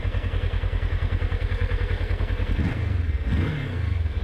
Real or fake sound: fake